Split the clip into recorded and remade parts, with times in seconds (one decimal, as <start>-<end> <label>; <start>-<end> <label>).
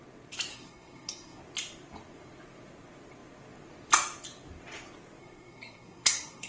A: 0.0-0.5 recorded; 0.5-1.4 remade; 1.4-5.2 recorded; 5.2-6.5 remade